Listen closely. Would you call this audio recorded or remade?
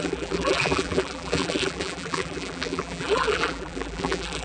remade